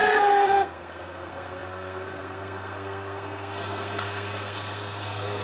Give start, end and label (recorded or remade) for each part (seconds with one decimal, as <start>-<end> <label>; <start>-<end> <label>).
0.0-5.4 remade